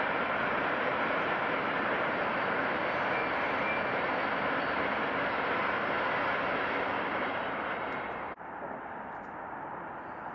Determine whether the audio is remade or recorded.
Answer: recorded